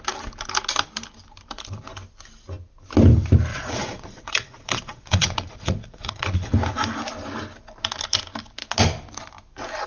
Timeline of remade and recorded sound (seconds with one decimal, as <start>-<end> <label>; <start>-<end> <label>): 0.0-3.5 recorded; 3.5-6.5 remade; 6.5-9.9 recorded

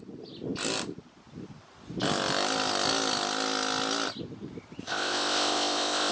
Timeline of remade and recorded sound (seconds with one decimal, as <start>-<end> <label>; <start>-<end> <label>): 0.0-4.8 recorded; 4.8-6.1 remade

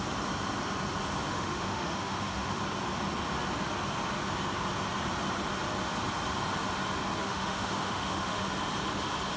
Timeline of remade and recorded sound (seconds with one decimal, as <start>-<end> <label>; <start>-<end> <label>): 0.0-1.3 recorded; 1.3-2.6 remade; 2.6-7.2 recorded; 7.2-8.5 remade; 8.5-9.4 recorded

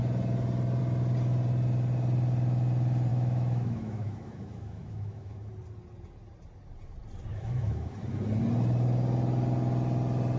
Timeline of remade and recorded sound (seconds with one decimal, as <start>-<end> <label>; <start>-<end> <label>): 0.0-3.1 recorded; 3.1-5.5 remade; 5.5-7.3 recorded; 7.3-7.9 remade; 7.9-10.4 recorded

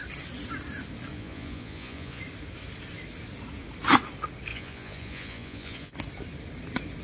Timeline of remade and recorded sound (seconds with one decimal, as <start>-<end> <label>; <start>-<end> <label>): 0.0-1.1 recorded; 1.1-2.2 remade; 2.2-4.5 recorded; 4.5-5.9 remade; 5.9-7.0 recorded

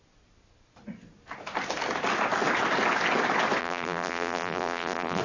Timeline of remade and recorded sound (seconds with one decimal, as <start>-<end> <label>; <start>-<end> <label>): 0.0-3.6 recorded; 3.6-5.2 remade